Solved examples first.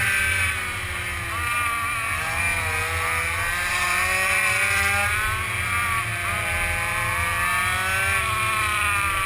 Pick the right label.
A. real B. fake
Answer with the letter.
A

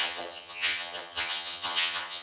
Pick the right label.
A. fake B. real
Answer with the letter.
A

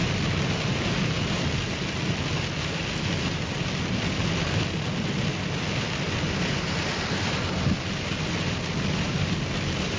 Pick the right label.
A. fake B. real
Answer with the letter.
B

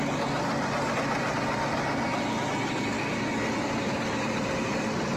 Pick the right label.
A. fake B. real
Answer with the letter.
B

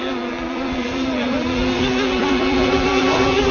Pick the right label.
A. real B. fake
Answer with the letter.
B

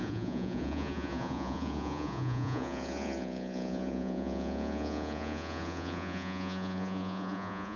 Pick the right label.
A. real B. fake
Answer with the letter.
B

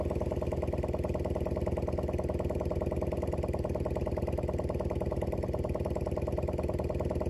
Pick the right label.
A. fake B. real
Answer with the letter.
B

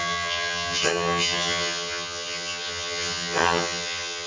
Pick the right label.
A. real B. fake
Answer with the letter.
B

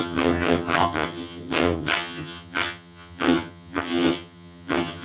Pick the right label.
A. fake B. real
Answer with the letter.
A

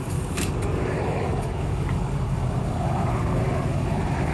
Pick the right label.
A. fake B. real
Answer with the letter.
A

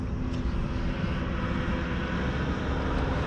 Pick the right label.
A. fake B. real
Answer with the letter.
B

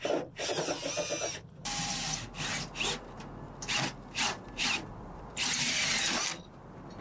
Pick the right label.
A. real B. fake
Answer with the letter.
A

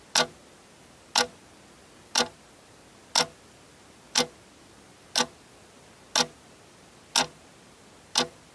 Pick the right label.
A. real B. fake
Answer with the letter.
A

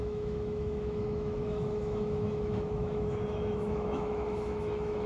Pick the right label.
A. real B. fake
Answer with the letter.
B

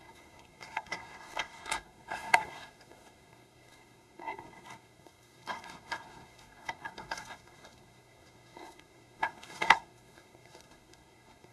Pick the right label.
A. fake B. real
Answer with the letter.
A